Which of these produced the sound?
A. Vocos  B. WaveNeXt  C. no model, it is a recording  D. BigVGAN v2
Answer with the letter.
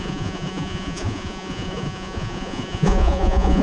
A